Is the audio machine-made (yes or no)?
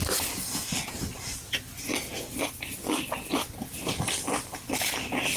no